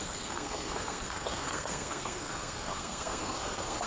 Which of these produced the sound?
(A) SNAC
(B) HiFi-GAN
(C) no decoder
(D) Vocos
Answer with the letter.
A